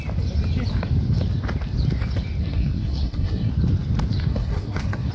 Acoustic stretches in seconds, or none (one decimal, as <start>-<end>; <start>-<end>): 0.0-2.4; 3.5-4.2